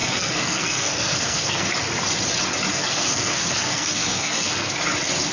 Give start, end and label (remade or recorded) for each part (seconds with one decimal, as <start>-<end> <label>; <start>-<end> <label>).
0.0-1.7 remade; 1.7-2.7 recorded; 2.7-4.7 remade; 4.7-5.3 recorded